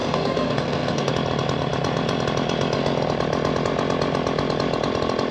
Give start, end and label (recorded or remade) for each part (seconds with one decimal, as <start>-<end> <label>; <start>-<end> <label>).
0.0-1.1 remade; 1.1-5.3 recorded